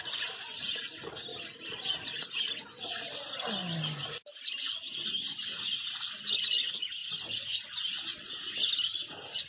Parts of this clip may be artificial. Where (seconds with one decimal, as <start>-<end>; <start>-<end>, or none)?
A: none